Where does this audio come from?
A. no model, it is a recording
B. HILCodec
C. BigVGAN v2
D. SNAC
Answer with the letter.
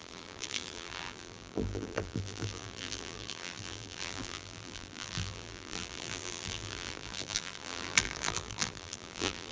C